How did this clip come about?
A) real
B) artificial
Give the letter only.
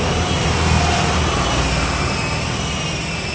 A